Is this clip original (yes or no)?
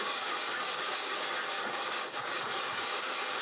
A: no